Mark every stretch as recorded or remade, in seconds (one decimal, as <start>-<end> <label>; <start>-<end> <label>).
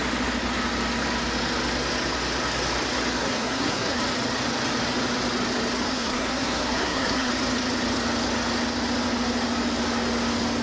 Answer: 0.0-3.2 recorded; 3.2-4.0 remade; 4.0-5.9 recorded; 5.9-7.3 remade; 7.3-10.6 recorded